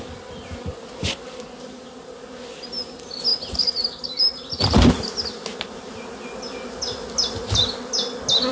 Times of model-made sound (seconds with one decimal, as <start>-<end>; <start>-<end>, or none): none